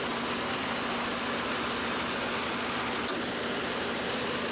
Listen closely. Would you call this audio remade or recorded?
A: recorded